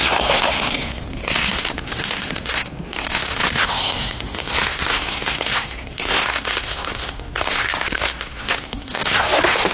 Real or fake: fake